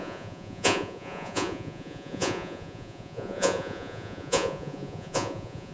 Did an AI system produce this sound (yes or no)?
yes